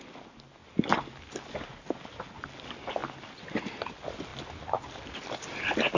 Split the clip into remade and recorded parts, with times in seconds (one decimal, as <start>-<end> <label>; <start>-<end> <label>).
0.0-6.0 recorded